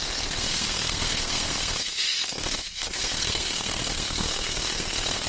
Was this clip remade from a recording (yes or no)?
yes